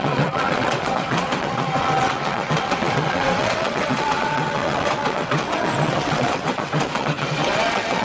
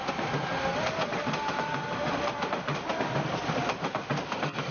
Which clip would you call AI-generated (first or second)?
first